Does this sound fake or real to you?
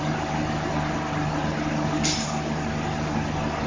real